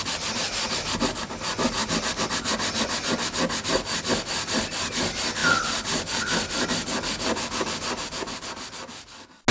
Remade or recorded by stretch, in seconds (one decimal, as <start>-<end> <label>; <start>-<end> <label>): 0.0-9.5 recorded